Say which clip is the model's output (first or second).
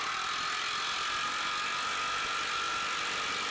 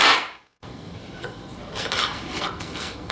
second